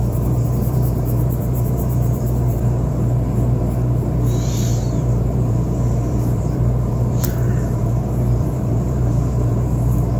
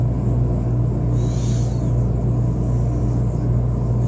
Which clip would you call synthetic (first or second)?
first